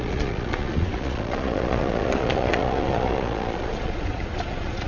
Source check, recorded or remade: remade